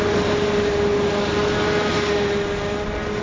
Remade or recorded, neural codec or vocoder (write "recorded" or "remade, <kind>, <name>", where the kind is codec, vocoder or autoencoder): recorded